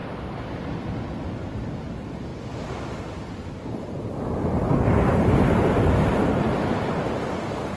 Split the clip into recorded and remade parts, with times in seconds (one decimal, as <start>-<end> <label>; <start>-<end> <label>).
0.0-7.8 recorded